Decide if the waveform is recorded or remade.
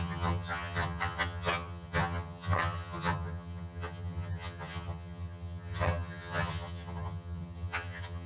remade